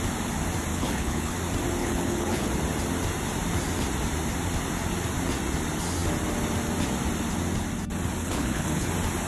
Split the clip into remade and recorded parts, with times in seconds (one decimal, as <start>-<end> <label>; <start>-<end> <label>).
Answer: 0.0-0.7 recorded; 0.7-1.3 remade; 1.3-1.8 recorded; 1.8-2.5 remade; 2.5-8.2 recorded; 8.2-8.9 remade; 8.9-9.3 recorded